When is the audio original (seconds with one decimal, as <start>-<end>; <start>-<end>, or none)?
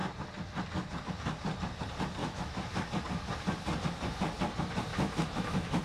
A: 0.0-2.2; 2.9-4.9